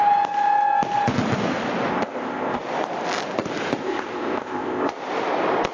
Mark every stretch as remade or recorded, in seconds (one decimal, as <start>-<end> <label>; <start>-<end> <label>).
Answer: 0.0-1.9 recorded; 1.9-2.6 remade; 2.6-3.8 recorded; 3.8-4.9 remade; 4.9-5.7 recorded